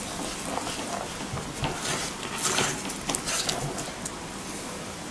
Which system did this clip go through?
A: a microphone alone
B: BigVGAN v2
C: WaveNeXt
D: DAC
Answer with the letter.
A